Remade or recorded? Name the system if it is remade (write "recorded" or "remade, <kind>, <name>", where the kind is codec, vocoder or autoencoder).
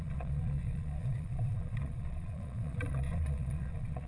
remade, vocoder, Vocos